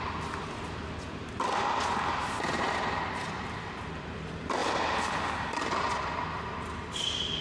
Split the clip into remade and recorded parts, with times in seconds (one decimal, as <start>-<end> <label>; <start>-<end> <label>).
0.0-7.4 recorded

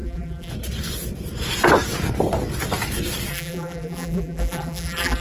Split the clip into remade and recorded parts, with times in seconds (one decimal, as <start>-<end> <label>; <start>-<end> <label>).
0.0-0.5 remade; 0.5-3.3 recorded; 3.3-5.2 remade

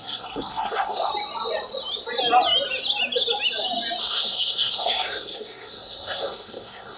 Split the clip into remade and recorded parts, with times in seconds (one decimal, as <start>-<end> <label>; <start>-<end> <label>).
0.0-1.1 remade; 1.1-4.0 recorded; 4.0-7.0 remade

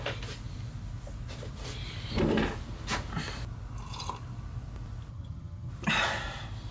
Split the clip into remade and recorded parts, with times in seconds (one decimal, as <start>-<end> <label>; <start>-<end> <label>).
0.0-5.1 recorded; 5.1-5.7 remade; 5.7-6.7 recorded

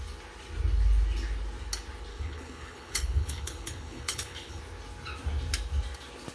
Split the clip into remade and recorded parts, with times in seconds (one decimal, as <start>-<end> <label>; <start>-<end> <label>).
0.0-2.1 recorded; 2.1-4.6 remade; 4.6-6.3 recorded

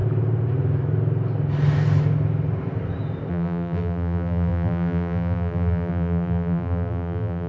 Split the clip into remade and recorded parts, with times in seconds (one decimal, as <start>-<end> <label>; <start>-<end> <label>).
0.0-3.3 recorded; 3.3-7.5 remade

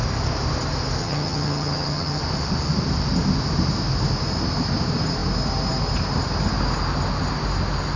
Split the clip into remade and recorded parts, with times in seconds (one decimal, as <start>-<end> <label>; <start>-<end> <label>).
0.0-1.0 recorded; 1.0-2.2 remade; 2.2-8.0 recorded

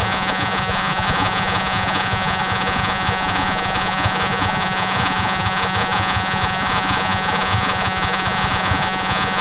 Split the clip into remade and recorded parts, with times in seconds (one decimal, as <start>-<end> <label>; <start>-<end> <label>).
0.0-9.4 remade